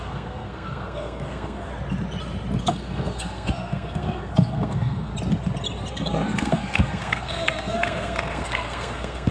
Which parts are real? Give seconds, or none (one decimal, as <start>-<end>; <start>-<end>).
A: 1.7-2.6; 5.1-5.9